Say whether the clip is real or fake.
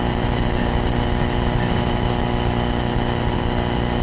real